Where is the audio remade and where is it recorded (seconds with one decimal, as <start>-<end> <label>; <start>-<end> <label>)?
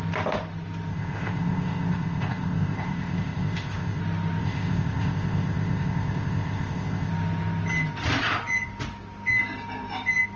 0.0-0.9 recorded; 0.9-4.0 remade; 4.0-4.4 recorded; 4.4-7.1 remade; 7.1-10.4 recorded